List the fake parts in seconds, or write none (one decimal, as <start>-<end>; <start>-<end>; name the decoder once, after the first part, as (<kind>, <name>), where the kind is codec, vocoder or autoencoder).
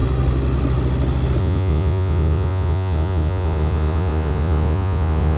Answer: 1.4-5.4 (vocoder, Vocos)